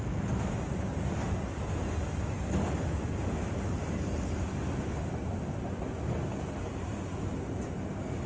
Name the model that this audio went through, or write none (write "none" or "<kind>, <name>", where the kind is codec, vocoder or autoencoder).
none